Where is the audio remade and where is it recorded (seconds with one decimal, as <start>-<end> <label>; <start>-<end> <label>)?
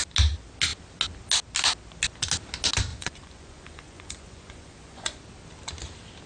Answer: 0.0-2.9 recorded; 2.9-5.2 remade; 5.2-6.3 recorded